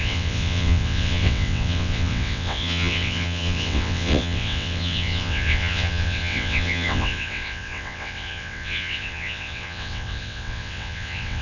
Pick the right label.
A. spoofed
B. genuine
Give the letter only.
A